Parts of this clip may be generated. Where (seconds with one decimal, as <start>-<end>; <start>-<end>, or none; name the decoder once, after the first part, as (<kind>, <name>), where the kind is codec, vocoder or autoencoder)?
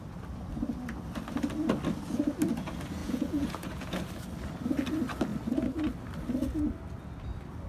3.0-4.0 (vocoder, Vocos)